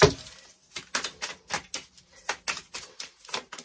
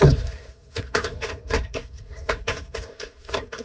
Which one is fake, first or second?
second